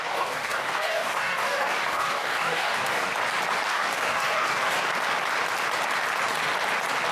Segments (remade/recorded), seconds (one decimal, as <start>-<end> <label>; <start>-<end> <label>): 0.0-3.1 remade; 3.1-3.7 recorded; 3.7-4.8 remade; 4.8-7.1 recorded